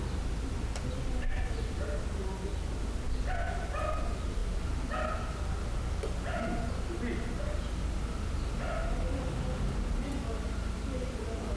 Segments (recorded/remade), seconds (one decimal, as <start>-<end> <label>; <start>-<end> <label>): 0.0-11.6 recorded